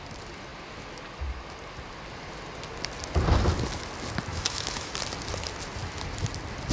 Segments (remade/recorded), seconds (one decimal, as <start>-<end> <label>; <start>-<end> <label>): 0.0-4.3 recorded; 4.3-4.9 remade; 4.9-6.7 recorded